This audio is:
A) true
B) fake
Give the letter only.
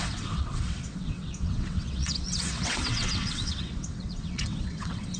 B